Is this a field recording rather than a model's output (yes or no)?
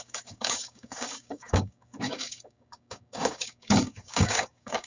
no